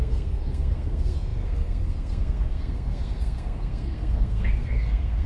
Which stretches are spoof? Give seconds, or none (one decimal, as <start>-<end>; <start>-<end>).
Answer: 0.0-5.3

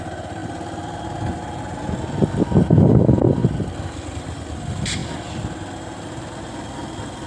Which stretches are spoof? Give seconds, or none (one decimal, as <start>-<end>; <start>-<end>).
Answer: none

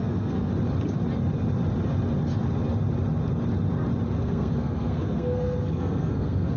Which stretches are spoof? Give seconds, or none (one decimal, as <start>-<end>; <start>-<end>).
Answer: 0.0-0.5; 4.2-6.6